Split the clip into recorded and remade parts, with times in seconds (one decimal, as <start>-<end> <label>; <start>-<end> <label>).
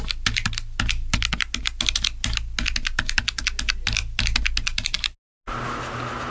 0.0-6.3 recorded